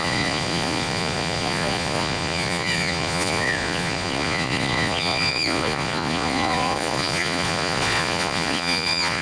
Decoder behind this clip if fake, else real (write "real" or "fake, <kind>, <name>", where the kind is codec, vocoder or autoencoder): fake, vocoder, Vocos